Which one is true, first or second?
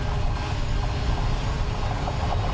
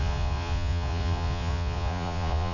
first